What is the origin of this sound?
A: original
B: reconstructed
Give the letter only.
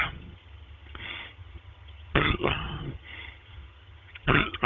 B